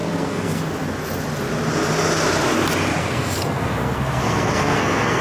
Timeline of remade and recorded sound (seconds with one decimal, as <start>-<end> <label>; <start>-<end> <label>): 0.0-0.6 remade; 0.6-3.0 recorded; 3.0-5.2 remade